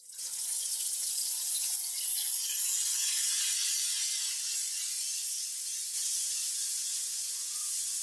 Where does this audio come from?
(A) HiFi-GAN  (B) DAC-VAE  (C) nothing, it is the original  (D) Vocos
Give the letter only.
D